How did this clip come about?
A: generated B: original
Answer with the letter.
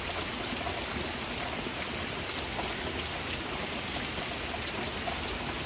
B